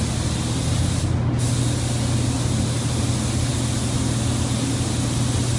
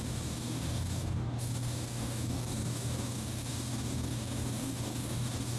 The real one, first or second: first